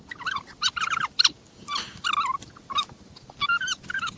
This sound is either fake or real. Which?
real